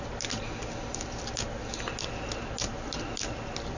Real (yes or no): yes